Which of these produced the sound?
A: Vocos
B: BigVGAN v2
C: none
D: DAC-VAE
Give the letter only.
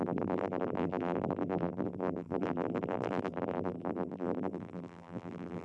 B